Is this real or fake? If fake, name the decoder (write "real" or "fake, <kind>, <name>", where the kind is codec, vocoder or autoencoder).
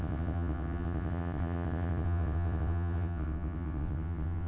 fake, vocoder, WaveNeXt